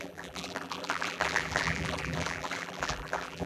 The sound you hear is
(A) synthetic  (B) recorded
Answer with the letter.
A